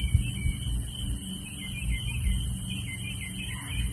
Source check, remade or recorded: recorded